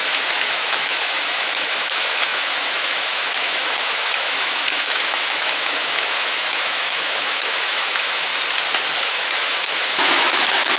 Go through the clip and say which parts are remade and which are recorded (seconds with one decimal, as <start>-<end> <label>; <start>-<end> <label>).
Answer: 0.0-8.3 remade; 8.3-9.0 recorded; 9.0-10.8 remade